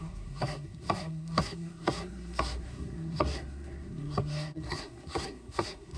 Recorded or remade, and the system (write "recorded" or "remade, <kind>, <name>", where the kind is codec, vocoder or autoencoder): remade, codec, SNAC